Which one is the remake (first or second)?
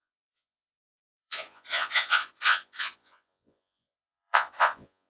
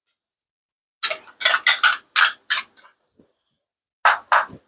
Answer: first